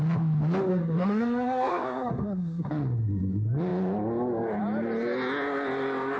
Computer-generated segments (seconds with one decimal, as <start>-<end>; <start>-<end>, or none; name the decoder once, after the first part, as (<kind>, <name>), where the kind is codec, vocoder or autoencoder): 0.7-2.7 (codec, SNAC)